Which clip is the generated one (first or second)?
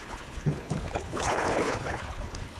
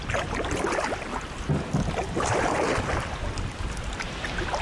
first